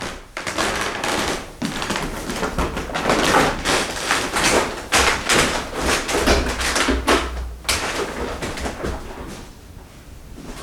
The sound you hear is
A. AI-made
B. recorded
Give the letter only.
B